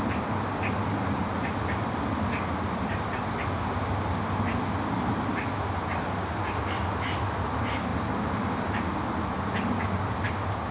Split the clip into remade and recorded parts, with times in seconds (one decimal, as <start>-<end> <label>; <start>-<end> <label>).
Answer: 0.0-10.7 recorded